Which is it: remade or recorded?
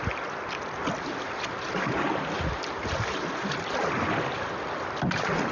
recorded